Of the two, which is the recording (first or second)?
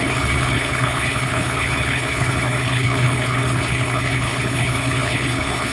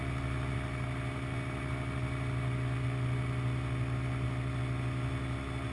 second